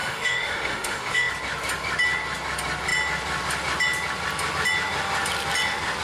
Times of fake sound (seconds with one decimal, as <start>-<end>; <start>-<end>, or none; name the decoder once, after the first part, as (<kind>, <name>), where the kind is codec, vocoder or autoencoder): 0.0-1.3 (autoencoder, DAC-VAE)